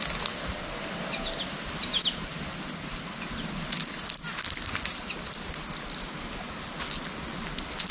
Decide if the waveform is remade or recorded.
recorded